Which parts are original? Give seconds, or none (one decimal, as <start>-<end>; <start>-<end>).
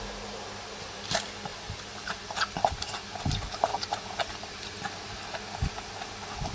0.0-6.5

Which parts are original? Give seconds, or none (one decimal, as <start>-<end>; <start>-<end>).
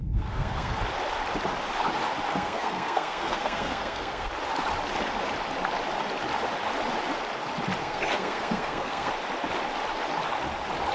0.8-2.3; 4.3-7.8; 9.1-10.9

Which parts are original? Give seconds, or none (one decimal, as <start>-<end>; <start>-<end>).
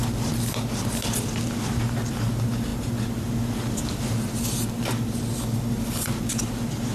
0.0-6.9